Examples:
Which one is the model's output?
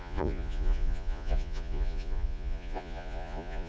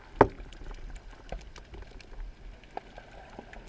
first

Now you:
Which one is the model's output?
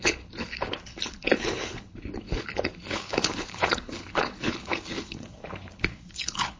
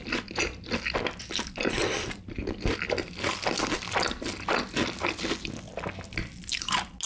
first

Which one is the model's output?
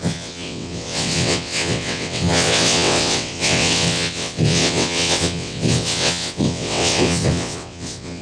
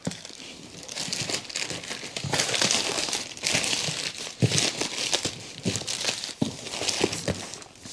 first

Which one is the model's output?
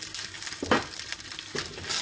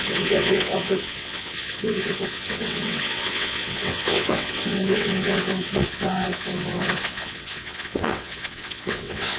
second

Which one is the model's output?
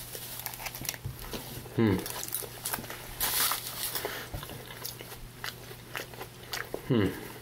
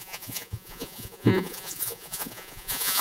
second